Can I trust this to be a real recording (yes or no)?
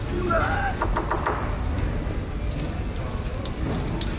yes